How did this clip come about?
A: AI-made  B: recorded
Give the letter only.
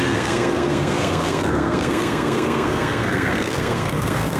A